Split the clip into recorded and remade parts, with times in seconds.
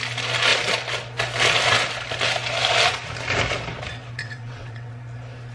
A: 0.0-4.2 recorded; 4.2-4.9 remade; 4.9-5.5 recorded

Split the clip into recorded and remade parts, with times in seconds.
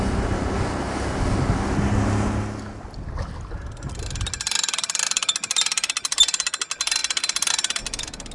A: 0.0-7.0 recorded; 7.0-7.8 remade; 7.8-8.3 recorded